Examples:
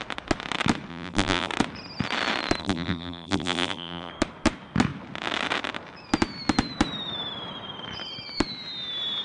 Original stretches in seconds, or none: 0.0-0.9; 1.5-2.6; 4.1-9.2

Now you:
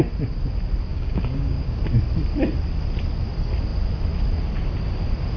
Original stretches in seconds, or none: 0.0-0.9; 1.8-5.4